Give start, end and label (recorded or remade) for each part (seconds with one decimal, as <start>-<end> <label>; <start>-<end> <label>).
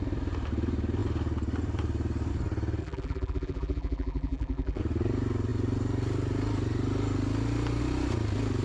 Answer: 0.0-2.8 recorded; 2.8-4.8 remade; 4.8-8.6 recorded